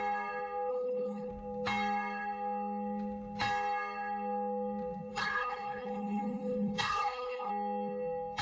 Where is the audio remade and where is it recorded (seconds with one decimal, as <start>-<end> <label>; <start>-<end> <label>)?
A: 0.0-0.7 recorded; 0.7-1.3 remade; 1.3-5.1 recorded; 5.1-7.5 remade; 7.5-8.4 recorded